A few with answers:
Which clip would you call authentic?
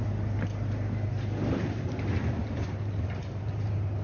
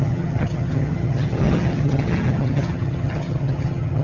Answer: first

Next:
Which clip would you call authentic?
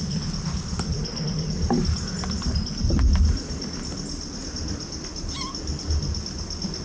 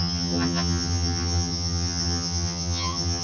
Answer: first